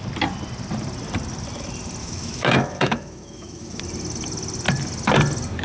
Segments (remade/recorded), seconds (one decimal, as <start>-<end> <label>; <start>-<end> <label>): 0.0-2.0 recorded; 2.0-3.8 remade; 3.8-5.6 recorded

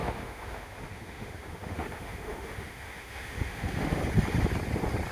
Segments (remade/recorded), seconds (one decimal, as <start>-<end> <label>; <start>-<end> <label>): 0.0-4.0 remade; 4.0-5.1 recorded

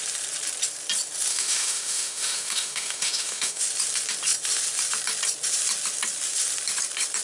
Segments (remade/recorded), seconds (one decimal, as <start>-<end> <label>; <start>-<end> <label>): 0.0-1.3 recorded; 1.3-3.6 remade; 3.6-7.2 recorded

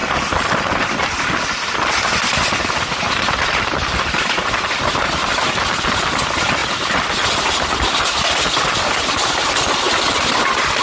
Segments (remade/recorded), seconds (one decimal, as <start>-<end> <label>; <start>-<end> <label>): 0.0-10.8 recorded